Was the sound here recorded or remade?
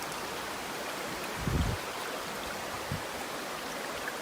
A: recorded